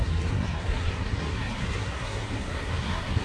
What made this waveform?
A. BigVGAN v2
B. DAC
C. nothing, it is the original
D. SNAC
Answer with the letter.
D